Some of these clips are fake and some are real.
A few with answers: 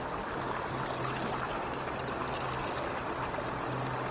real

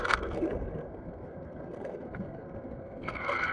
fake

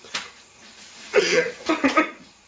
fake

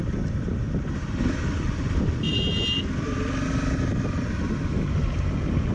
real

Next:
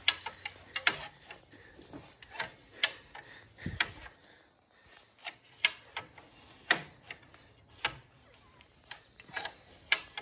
real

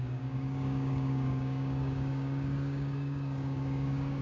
fake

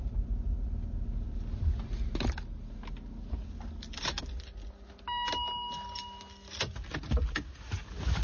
real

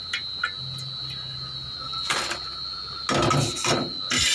real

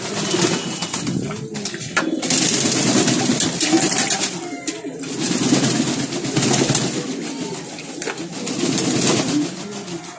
real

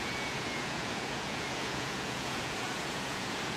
fake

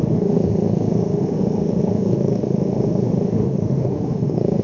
fake